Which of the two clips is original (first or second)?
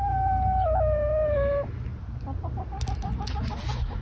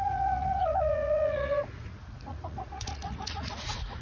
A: first